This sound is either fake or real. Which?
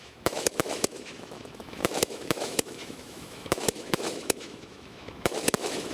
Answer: fake